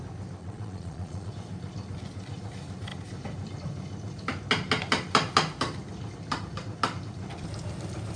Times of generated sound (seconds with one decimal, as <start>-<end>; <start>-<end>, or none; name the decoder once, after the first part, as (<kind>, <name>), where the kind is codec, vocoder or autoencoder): 0.4-1.3 (vocoder, Vocos)